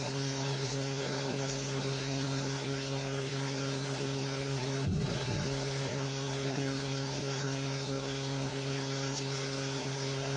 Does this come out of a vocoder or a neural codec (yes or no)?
yes